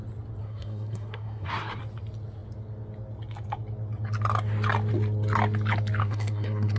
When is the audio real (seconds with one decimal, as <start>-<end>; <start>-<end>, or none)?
0.0-0.4; 1.8-6.0